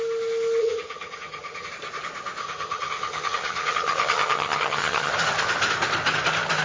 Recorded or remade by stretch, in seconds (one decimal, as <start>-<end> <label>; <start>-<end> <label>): 0.0-0.6 recorded; 0.6-1.7 remade; 1.7-2.4 recorded; 2.4-5.1 remade; 5.1-6.6 recorded